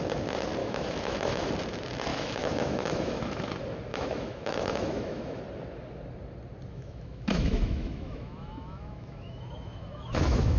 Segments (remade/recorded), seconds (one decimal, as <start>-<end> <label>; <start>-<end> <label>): 0.0-0.6 recorded; 0.6-1.5 remade; 1.5-2.1 recorded; 2.1-3.5 remade; 3.5-3.9 recorded; 3.9-5.4 remade; 5.4-6.7 recorded; 6.7-10.6 remade